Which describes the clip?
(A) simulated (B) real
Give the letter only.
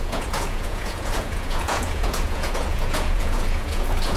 A